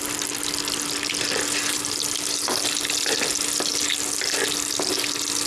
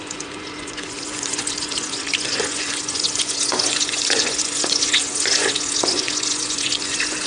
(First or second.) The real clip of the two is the first